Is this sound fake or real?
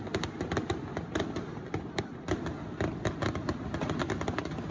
real